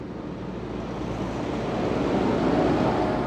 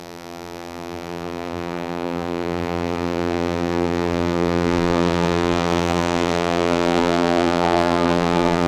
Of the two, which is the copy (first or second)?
second